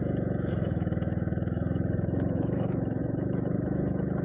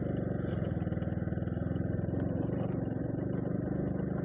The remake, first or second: first